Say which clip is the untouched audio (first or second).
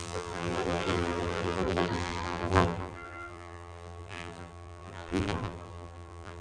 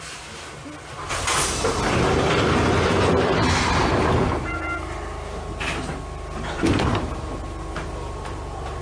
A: second